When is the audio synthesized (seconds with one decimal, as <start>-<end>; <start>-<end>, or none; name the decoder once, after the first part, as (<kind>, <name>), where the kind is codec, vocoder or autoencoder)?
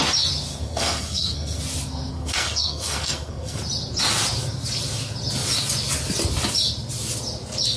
0.5-1.6 (codec, SNAC); 2.1-3.6